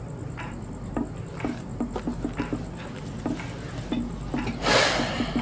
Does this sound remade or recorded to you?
recorded